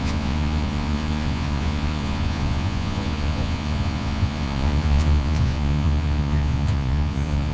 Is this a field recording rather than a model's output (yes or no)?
no